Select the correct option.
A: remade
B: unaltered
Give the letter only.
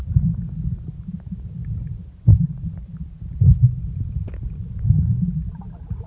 B